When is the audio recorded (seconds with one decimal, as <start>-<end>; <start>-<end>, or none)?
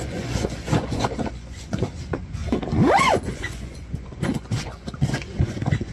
2.4-3.0